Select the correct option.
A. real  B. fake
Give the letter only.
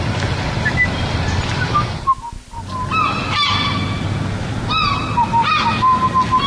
A